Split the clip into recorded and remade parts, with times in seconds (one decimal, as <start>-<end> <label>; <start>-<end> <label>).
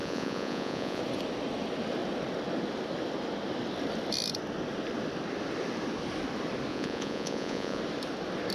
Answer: 0.0-1.0 remade; 1.0-6.7 recorded; 6.7-7.8 remade; 7.8-8.5 recorded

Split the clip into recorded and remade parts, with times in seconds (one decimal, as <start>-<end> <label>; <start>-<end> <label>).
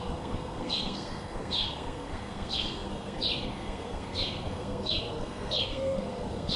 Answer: 0.0-6.6 remade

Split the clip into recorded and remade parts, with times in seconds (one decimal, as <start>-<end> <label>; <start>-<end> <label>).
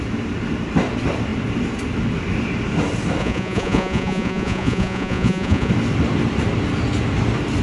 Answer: 0.0-3.2 recorded; 3.2-5.7 remade; 5.7-7.6 recorded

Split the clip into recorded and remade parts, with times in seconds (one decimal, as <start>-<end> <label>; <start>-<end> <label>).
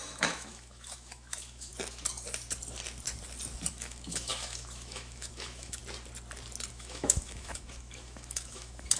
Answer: 0.0-1.7 remade; 1.7-3.7 recorded; 3.7-5.8 remade; 5.8-6.7 recorded; 6.7-9.0 remade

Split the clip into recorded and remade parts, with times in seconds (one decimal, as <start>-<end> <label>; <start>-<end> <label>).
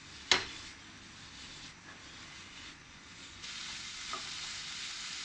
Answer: 0.0-2.4 recorded; 2.4-3.6 remade; 3.6-5.2 recorded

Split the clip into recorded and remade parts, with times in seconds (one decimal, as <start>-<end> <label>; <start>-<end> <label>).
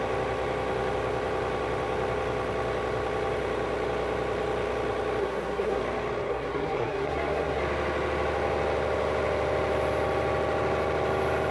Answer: 0.0-5.2 recorded; 5.2-5.8 remade; 5.8-6.3 recorded; 6.3-7.6 remade; 7.6-11.5 recorded